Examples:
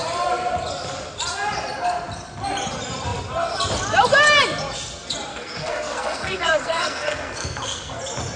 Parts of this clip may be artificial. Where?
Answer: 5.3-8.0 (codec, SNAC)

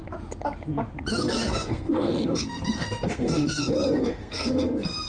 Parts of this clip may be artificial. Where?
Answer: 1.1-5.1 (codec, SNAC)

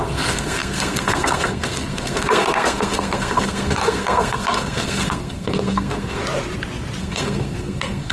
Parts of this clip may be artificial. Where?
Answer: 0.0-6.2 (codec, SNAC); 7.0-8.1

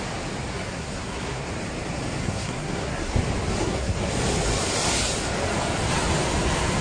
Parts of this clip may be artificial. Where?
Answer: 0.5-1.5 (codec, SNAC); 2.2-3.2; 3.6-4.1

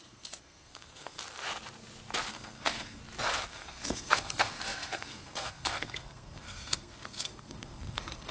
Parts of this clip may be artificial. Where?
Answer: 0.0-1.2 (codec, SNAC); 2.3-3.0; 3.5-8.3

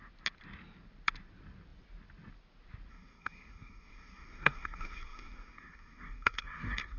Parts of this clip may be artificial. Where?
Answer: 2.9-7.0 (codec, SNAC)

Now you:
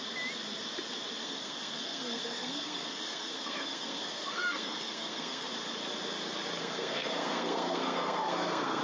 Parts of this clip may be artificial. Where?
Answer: 1.2-5.5 (codec, SNAC); 6.6-8.8